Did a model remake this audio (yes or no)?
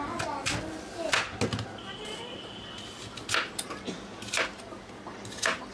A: no